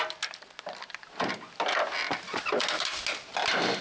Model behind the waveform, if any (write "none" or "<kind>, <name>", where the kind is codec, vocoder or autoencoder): none